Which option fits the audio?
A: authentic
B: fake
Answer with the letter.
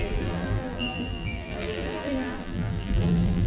B